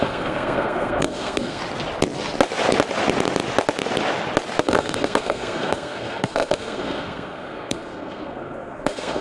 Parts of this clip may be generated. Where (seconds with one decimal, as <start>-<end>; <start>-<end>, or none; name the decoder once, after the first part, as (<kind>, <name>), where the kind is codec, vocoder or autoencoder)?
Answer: 0.0-1.6 (codec, SNAC); 4.6-9.2